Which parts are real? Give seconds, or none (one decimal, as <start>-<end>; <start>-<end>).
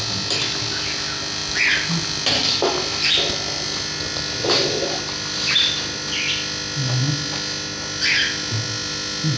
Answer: 0.0-9.4